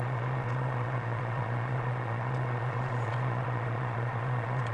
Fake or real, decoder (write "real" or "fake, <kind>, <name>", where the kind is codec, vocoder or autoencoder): fake, vocoder, Vocos